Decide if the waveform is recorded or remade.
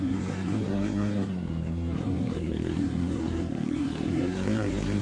remade